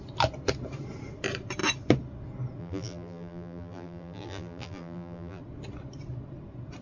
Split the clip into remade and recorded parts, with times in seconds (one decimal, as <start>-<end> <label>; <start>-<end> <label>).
0.0-2.6 recorded; 2.6-5.4 remade; 5.4-6.8 recorded